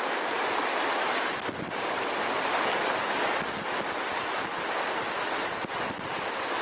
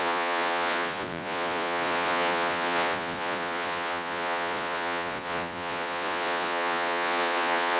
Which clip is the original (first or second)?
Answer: first